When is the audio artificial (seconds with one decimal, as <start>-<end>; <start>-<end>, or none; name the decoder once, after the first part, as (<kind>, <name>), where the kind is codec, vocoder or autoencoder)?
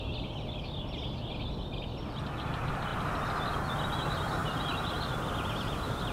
none